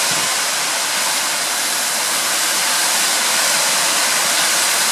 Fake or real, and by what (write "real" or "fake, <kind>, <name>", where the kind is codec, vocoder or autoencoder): fake, vocoder, BigVGAN v2